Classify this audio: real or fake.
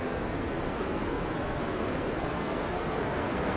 fake